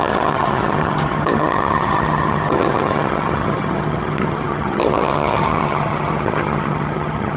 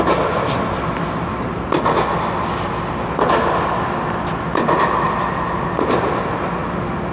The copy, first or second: first